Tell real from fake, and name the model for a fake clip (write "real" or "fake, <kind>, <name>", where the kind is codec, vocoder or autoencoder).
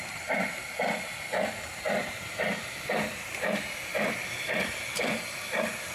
fake, vocoder, BigVGAN v2